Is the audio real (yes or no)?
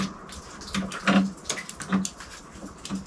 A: yes